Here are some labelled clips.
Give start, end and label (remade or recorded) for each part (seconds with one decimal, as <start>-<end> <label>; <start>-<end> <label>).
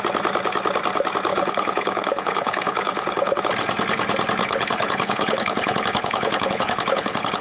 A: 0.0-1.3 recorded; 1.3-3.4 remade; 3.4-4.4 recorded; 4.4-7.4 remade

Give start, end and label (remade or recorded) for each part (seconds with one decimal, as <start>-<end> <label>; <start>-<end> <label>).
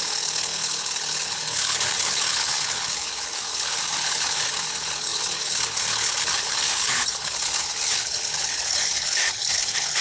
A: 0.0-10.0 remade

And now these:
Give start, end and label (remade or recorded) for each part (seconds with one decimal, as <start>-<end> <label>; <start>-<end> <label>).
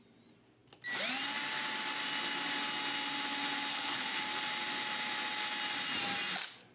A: 0.0-3.7 recorded; 3.7-4.2 remade; 4.2-6.7 recorded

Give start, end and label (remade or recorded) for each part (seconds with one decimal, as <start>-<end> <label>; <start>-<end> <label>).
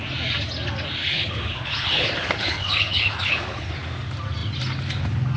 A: 0.0-1.0 recorded; 1.0-3.7 remade; 3.7-5.4 recorded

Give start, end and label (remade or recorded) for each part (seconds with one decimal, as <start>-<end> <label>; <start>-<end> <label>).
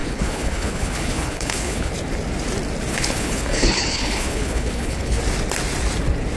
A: 0.0-1.9 remade; 1.9-2.9 recorded; 2.9-5.2 remade; 5.2-6.4 recorded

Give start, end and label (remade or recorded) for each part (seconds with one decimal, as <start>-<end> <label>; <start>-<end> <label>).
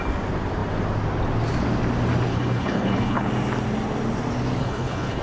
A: 0.0-2.3 recorded; 2.3-3.3 remade; 3.3-4.6 recorded; 4.6-5.2 remade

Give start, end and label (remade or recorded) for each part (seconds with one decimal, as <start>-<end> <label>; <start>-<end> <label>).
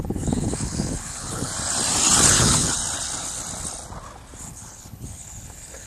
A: 0.0-1.5 remade; 1.5-2.3 recorded; 2.3-2.8 remade; 2.8-4.4 recorded; 4.4-5.9 remade